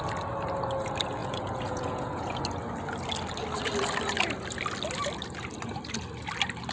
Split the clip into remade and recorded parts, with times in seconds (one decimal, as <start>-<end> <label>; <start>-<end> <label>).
0.0-1.2 recorded; 1.2-2.4 remade; 2.4-6.7 recorded